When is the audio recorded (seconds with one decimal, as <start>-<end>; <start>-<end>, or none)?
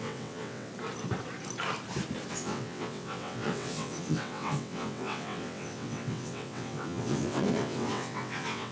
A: 0.7-2.3